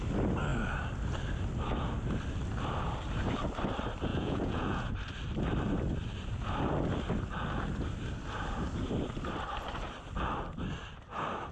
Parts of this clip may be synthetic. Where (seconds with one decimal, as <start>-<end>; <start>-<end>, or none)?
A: 4.1-4.9